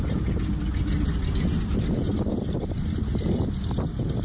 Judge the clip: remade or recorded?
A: recorded